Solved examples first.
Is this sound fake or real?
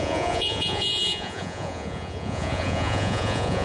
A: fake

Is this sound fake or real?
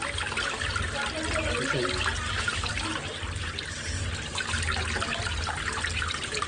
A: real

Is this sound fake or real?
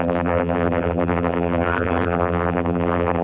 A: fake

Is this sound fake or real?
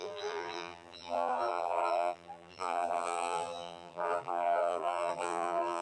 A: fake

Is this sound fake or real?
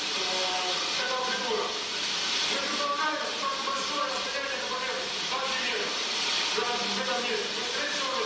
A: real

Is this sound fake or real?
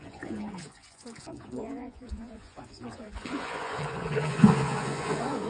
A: fake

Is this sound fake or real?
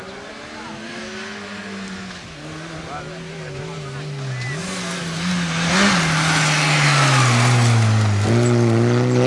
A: real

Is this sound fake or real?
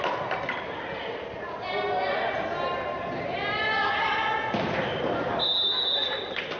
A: real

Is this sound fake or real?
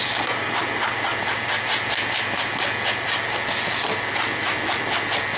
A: real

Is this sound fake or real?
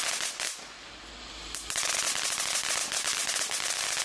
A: real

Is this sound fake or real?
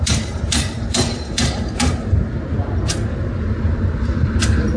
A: fake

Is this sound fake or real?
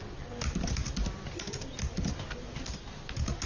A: real